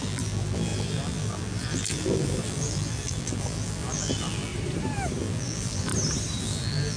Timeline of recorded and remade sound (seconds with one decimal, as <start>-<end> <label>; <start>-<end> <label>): 0.0-4.5 remade; 4.5-5.2 recorded; 5.2-5.9 remade; 5.9-6.4 recorded; 6.4-7.0 remade